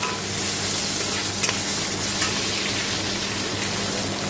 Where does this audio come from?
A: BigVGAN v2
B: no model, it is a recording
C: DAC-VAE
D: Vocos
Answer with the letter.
B